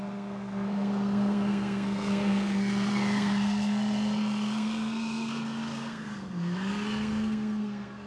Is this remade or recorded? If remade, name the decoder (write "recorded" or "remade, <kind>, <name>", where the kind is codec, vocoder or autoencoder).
remade, codec, SNAC